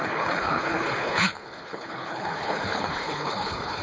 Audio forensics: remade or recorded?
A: remade